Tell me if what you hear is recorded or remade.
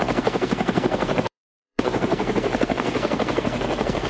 remade